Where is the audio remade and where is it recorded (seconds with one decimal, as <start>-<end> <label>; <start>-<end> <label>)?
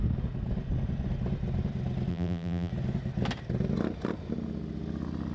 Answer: 0.0-2.1 recorded; 2.1-2.7 remade; 2.7-5.3 recorded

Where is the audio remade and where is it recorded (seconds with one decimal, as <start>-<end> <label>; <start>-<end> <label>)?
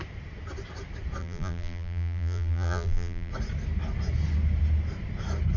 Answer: 0.0-1.2 recorded; 1.2-3.3 remade; 3.3-5.6 recorded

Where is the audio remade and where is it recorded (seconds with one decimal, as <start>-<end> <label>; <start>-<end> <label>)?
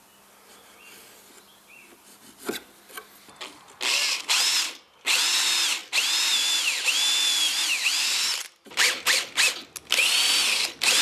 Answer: 0.0-11.0 recorded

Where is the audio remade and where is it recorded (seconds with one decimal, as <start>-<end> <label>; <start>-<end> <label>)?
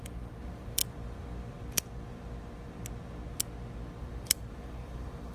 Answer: 0.0-0.8 remade; 0.8-4.0 recorded; 4.0-5.3 remade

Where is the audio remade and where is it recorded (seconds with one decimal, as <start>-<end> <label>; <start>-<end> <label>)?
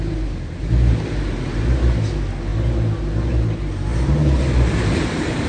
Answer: 0.0-3.9 recorded; 3.9-5.5 remade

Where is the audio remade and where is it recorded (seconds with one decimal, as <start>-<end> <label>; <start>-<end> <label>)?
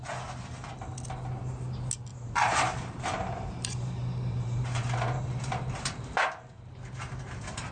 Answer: 0.0-2.1 recorded; 2.1-6.7 remade; 6.7-7.7 recorded